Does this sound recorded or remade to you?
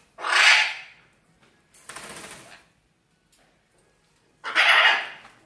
recorded